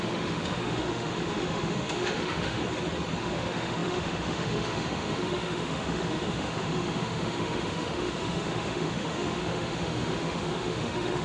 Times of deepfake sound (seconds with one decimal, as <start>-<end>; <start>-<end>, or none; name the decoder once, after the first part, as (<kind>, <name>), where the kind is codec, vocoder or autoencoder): 0.0-2.6 (autoencoder, DAC-VAE); 3.2-11.2